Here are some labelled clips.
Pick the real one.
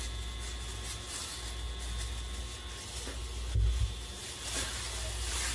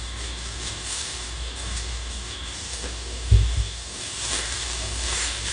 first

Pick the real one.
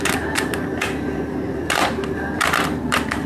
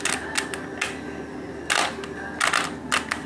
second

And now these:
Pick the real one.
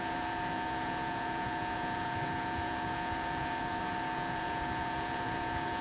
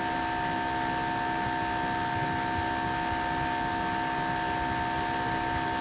second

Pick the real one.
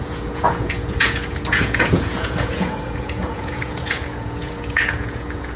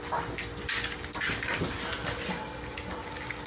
second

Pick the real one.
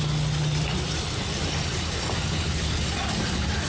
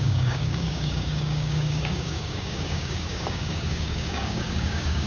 first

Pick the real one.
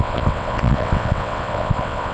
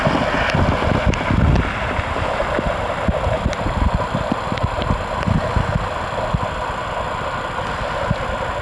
second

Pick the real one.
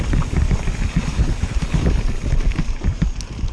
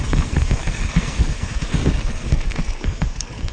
first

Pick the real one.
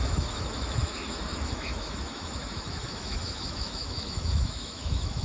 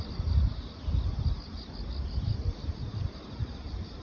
second